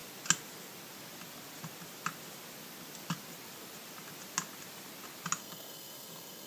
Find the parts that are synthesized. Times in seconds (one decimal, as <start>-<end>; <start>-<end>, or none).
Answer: 5.4-6.5